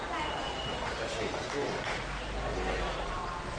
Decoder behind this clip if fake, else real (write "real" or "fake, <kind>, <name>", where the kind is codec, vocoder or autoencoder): real